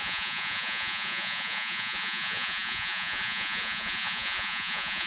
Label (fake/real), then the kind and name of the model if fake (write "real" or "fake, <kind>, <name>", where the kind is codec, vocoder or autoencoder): fake, vocoder, Vocos